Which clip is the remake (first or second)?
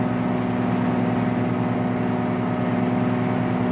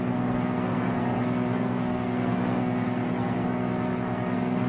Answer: second